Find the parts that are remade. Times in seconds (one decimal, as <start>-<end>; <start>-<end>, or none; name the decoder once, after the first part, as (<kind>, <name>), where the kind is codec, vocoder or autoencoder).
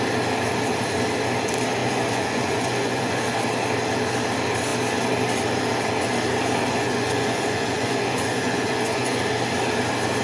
1.8-3.2 (vocoder, Vocos); 6.7-9.2